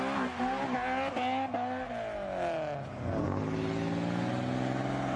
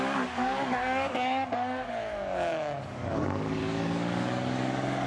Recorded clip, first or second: first